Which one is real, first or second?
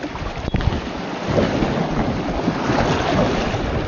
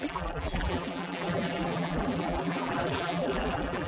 first